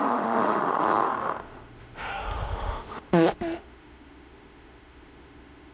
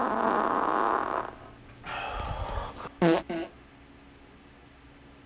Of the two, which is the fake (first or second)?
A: first